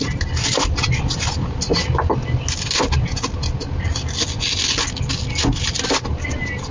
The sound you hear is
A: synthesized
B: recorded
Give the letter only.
B